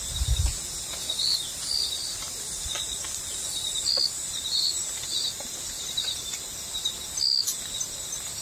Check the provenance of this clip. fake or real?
fake